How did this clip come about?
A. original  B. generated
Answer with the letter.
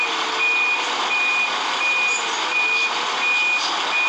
A